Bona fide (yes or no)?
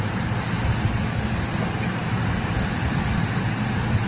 yes